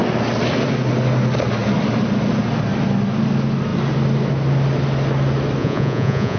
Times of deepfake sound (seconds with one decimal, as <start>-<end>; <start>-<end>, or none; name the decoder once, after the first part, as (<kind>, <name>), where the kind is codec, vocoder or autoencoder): 5.6-6.4 (vocoder, Vocos)